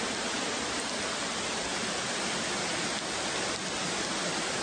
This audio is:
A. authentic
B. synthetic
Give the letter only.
A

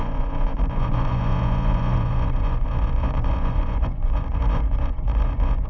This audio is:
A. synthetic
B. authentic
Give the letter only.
A